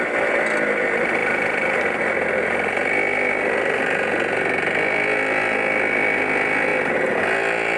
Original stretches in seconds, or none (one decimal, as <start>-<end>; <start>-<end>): 0.0-1.2; 2.0-6.7; 7.2-7.8